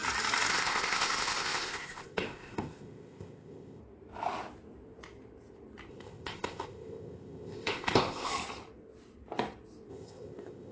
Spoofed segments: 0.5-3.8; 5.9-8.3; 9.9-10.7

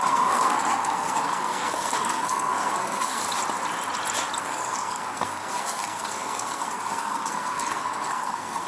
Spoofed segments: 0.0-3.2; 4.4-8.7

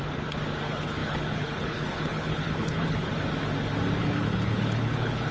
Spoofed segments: 0.6-3.1; 4.0-5.3